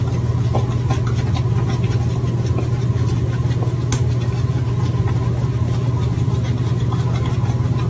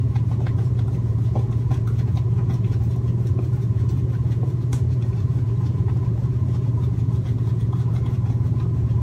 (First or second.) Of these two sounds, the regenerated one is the second